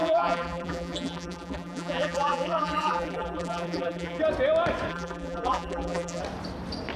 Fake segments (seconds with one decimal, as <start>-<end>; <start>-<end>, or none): 0.0-4.2; 4.9-6.2